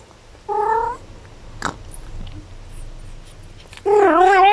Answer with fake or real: real